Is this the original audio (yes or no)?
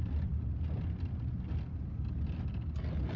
yes